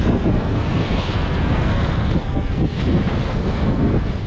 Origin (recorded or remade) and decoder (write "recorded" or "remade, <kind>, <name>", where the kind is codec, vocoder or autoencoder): remade, codec, SNAC